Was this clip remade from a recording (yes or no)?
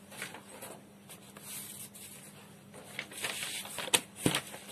no